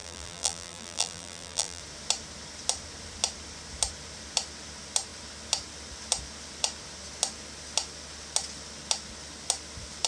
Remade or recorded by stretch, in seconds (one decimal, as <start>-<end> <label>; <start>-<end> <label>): 0.0-1.8 remade; 1.8-10.1 recorded